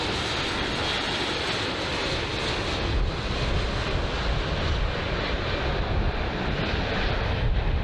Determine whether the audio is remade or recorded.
recorded